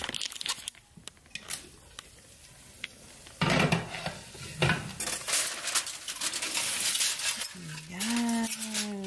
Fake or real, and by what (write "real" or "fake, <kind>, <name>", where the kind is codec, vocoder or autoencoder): real